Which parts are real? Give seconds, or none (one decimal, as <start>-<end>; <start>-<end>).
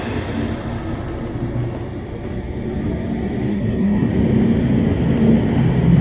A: 0.0-3.5; 4.1-6.0